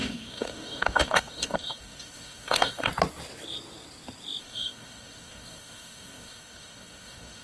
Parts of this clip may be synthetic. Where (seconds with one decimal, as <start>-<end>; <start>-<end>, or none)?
0.0-2.9; 4.4-7.4